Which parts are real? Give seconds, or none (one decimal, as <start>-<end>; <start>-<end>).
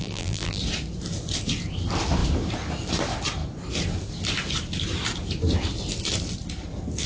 0.6-7.1